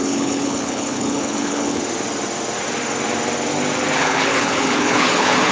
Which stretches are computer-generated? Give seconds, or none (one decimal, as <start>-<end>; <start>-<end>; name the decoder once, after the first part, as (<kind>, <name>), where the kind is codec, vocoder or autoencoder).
0.0-1.8 (codec, HILCodec); 4.0-5.5